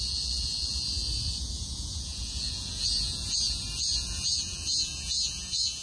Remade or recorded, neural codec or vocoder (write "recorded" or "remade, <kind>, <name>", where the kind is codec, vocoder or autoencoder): remade, vocoder, Vocos